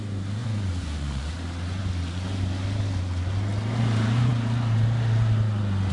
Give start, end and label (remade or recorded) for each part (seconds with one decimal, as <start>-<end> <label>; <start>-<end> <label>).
0.0-0.4 recorded; 0.4-1.3 remade; 1.3-5.9 recorded